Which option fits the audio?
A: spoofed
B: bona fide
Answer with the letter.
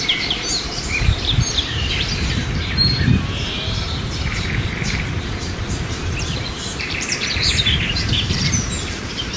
A